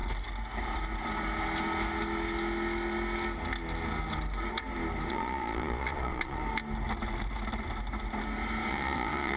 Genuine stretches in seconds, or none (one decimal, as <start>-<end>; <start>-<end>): 0.0-5.1; 6.4-8.7